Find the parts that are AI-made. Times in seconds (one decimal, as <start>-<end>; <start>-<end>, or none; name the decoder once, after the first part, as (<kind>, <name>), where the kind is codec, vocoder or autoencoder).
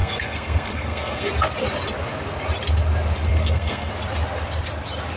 0.0-1.3 (codec, SNAC); 3.3-3.9